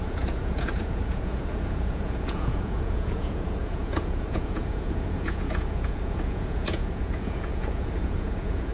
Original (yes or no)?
no